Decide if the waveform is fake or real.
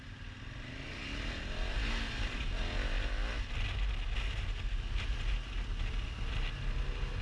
real